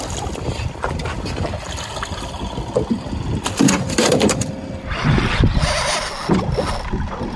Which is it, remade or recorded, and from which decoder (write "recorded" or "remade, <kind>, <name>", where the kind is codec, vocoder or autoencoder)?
recorded